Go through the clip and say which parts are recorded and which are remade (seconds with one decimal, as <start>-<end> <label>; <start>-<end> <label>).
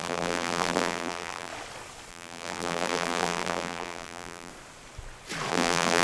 0.0-1.5 remade; 1.5-2.1 recorded; 2.1-4.5 remade; 4.5-5.5 recorded; 5.5-6.0 remade